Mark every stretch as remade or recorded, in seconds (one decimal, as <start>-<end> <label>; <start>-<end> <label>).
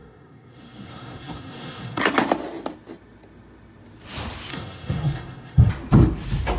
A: 0.0-2.0 remade; 2.0-4.5 recorded; 4.5-5.7 remade; 5.7-6.6 recorded